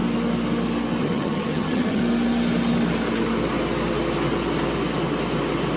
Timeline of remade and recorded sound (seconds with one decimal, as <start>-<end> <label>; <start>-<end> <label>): 0.0-1.0 recorded; 1.0-2.0 remade; 2.0-5.8 recorded